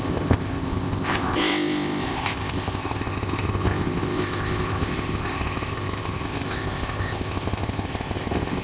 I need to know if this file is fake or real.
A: fake